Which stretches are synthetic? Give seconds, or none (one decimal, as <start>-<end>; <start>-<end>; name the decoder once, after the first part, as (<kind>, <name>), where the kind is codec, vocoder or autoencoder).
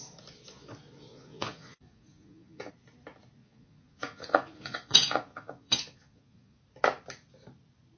1.1-2.7 (vocoder, Vocos); 3.4-6.6